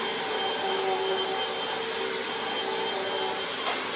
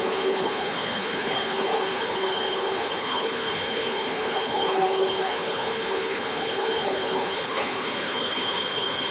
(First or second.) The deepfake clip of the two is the second